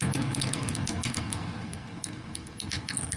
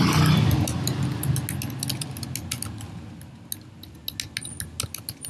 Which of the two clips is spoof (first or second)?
first